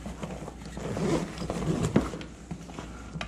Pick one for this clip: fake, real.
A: real